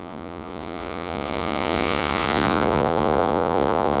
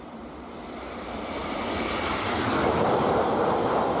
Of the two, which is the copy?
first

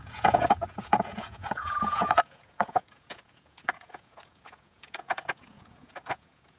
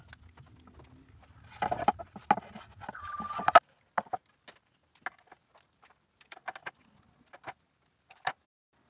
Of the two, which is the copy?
first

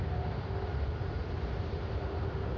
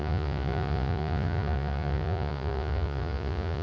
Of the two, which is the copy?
second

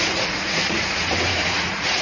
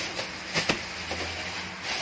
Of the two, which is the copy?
first